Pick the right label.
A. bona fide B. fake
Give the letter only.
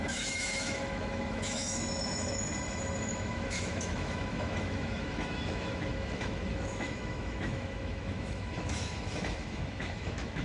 B